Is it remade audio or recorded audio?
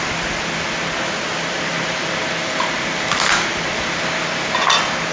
recorded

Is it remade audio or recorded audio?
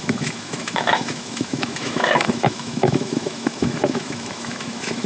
remade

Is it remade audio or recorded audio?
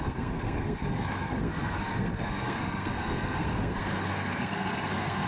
remade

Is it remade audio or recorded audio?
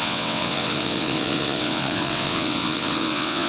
remade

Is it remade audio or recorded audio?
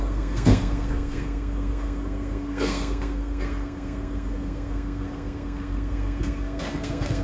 remade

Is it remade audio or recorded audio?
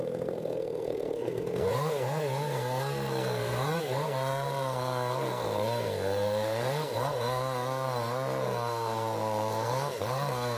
remade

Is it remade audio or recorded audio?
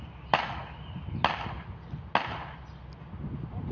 recorded